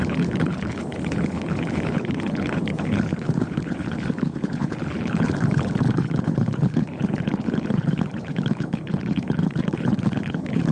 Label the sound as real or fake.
fake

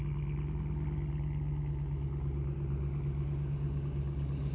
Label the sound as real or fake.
real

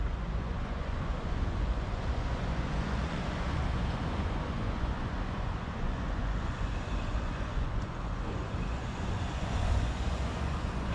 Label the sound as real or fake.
fake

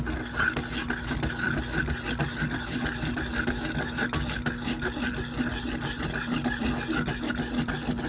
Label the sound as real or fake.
real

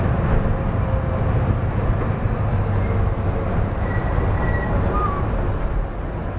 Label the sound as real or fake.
real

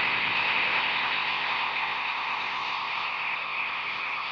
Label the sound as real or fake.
fake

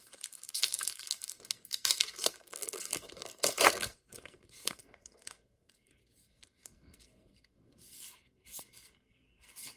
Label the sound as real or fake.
fake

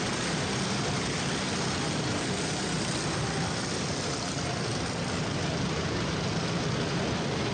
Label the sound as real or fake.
real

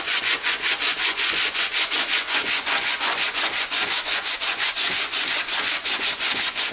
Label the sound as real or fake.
fake